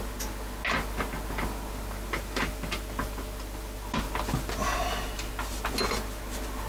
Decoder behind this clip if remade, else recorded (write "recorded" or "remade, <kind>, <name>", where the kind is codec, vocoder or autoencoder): recorded